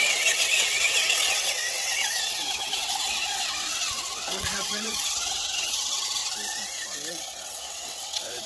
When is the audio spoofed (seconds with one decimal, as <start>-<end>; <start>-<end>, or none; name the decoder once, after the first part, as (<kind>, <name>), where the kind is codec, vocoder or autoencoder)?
0.0-6.2 (vocoder, WaveNeXt); 7.1-8.5

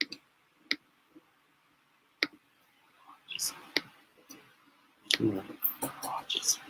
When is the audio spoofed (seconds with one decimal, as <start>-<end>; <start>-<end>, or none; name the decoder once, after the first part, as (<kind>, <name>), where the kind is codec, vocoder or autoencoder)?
none

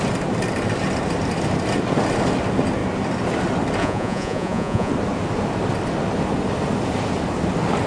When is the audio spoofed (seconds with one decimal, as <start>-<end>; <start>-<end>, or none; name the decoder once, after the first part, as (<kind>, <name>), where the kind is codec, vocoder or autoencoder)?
3.8-4.9 (vocoder, Vocos)